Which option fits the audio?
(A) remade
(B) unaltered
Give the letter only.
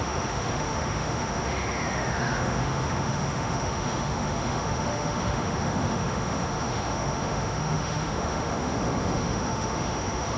A